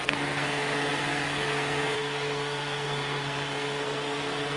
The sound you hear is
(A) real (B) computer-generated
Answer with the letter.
B